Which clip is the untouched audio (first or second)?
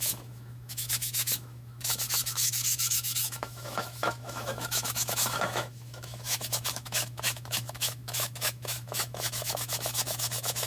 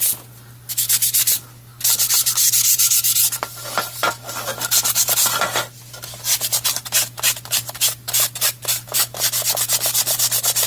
second